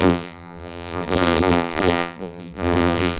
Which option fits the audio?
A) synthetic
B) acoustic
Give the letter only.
A